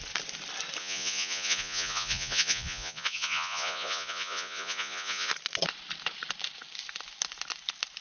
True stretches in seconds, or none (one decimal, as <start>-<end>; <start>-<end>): 0.0-0.8; 5.3-8.0

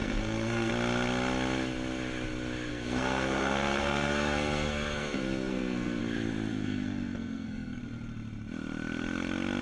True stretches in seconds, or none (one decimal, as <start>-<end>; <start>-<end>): 0.7-2.7; 6.0-6.5; 7.8-9.6